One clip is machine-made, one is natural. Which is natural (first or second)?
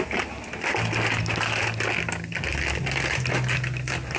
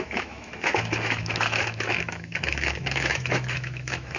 first